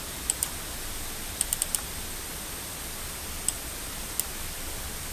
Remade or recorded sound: recorded